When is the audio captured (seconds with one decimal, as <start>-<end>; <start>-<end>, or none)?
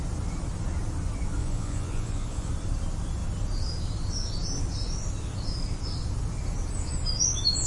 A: 0.0-1.4; 2.5-7.7